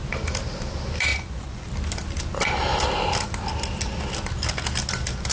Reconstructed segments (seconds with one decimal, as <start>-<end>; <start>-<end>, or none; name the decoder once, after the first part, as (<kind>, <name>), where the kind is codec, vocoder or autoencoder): 1.1-1.7 (vocoder, Vocos)